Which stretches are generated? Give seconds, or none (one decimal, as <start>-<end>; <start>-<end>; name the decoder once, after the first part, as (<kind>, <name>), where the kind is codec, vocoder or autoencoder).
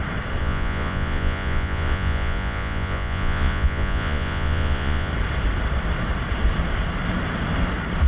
0.4-5.1 (vocoder, Vocos)